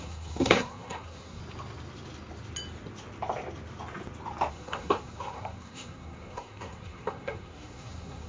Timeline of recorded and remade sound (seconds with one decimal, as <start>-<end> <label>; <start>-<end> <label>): 0.0-1.4 remade; 1.4-4.5 recorded; 4.5-8.3 remade